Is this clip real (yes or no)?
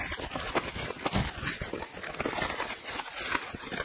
yes